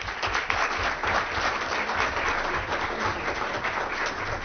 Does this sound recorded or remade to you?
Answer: recorded